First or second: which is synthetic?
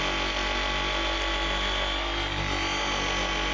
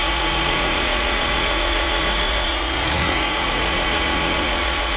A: second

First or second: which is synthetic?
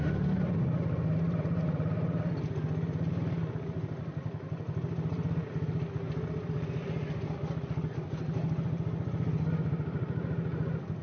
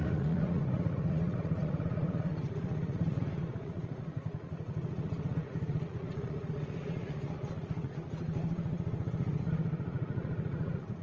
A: second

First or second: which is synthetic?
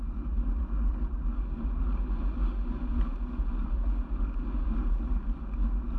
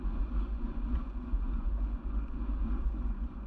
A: second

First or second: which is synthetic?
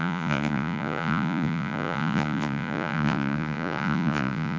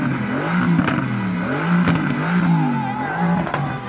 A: first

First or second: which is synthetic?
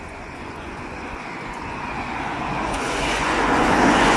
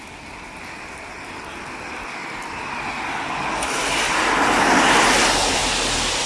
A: first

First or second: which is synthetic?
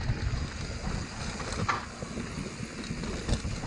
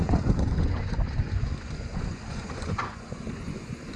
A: second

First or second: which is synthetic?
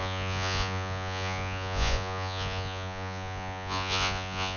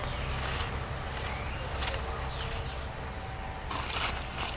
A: first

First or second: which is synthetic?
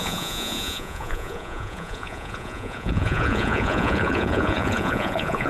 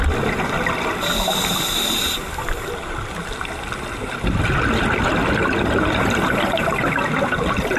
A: first